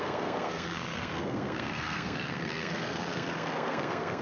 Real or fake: fake